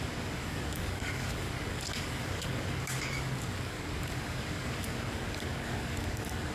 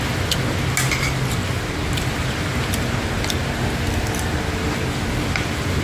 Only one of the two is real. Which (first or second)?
second